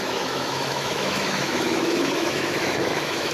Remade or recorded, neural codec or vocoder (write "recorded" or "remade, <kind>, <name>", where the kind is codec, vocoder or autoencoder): remade, autoencoder, DAC-VAE